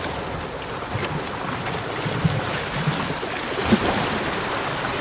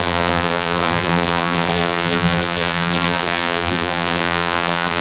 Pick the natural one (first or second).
first